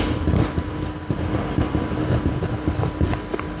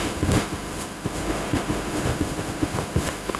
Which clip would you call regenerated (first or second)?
second